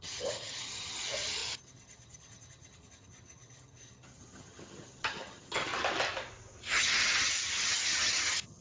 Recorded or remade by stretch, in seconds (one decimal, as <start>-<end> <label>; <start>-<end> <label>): 0.0-5.7 remade; 5.7-6.7 recorded; 6.7-8.6 remade